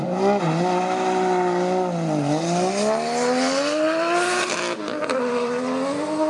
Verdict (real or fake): real